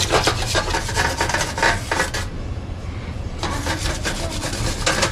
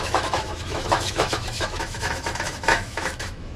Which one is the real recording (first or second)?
first